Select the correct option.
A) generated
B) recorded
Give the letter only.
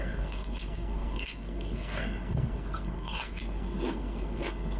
A